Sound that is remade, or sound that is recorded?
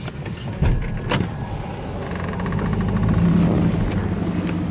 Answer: recorded